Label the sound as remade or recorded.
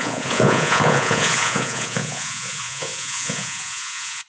remade